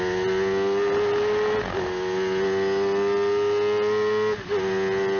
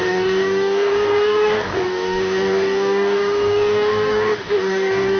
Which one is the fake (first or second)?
second